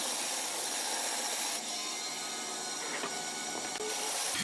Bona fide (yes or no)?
yes